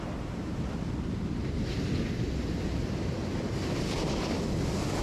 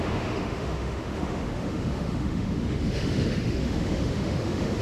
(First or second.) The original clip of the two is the first